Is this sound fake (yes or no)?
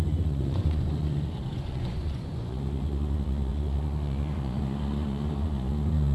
yes